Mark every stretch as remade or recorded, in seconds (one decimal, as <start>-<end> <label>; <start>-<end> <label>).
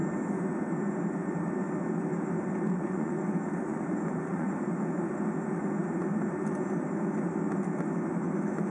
0.0-2.7 recorded; 2.7-5.0 remade; 5.0-8.7 recorded